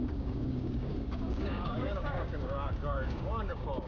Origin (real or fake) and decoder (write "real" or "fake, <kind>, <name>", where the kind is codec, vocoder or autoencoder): fake, codec, DAC